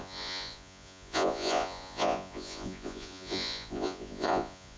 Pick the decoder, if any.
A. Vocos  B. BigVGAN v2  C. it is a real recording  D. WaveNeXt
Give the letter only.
A